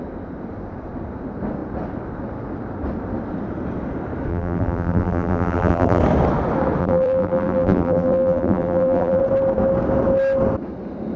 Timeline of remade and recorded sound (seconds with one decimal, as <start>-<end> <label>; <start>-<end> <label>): 0.0-4.3 recorded; 4.3-6.0 remade; 6.0-6.8 recorded; 6.8-9.2 remade; 9.2-11.2 recorded

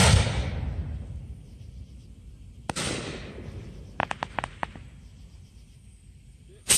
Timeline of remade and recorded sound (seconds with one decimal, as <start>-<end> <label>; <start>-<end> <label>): 0.0-6.8 recorded